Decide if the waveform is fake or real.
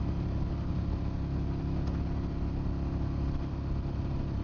real